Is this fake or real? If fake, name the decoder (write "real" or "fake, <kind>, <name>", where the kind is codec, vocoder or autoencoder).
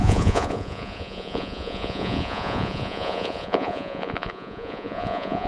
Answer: fake, vocoder, Vocos